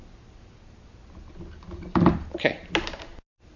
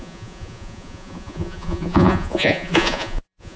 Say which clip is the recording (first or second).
first